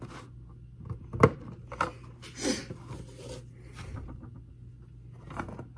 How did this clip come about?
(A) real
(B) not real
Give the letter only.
A